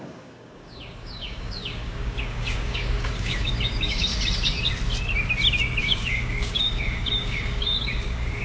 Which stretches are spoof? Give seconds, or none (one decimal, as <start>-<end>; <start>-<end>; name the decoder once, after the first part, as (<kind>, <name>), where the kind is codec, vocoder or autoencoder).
0.0-4.1 (codec, DAC); 5.8-8.4